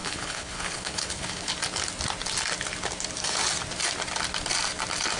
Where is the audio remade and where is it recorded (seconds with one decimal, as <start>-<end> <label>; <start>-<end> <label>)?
0.0-1.5 remade; 1.5-5.2 recorded